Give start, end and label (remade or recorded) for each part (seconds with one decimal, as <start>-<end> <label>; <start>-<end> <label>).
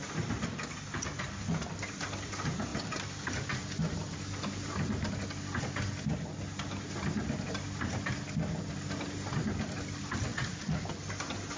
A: 0.0-10.3 recorded; 10.3-10.8 remade; 10.8-11.6 recorded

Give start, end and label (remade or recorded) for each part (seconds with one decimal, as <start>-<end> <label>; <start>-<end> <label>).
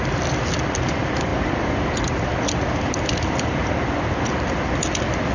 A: 0.0-5.3 recorded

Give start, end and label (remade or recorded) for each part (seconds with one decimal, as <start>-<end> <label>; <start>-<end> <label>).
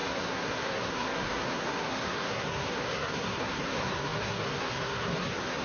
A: 0.0-5.6 remade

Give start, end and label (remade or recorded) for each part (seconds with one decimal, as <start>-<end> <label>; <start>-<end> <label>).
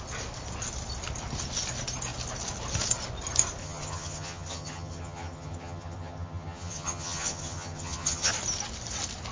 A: 0.0-3.6 recorded; 3.6-8.3 remade; 8.3-9.3 recorded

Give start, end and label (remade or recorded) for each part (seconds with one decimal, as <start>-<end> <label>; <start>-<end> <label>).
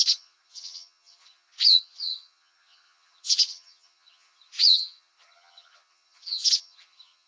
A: 0.0-7.3 remade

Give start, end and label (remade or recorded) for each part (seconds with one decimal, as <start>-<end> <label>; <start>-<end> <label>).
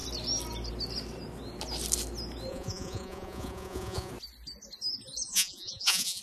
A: 0.0-2.5 recorded; 2.5-4.1 remade; 4.1-5.3 recorded; 5.3-6.2 remade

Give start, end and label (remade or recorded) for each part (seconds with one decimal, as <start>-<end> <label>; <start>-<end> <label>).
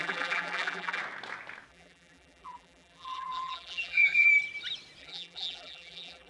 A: 0.0-1.0 remade; 1.0-1.7 recorded; 1.7-4.3 remade; 4.3-5.0 recorded; 5.0-6.3 remade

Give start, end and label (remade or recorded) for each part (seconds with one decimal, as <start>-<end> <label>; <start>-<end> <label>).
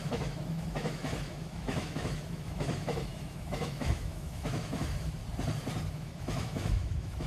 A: 0.0-5.2 remade; 5.2-5.9 recorded; 5.9-7.3 remade